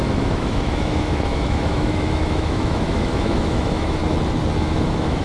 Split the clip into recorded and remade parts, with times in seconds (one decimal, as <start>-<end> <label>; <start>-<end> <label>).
0.0-4.0 remade; 4.0-4.6 recorded; 4.6-5.2 remade